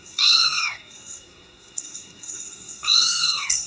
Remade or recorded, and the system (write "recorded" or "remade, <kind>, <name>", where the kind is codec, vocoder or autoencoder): remade, codec, SNAC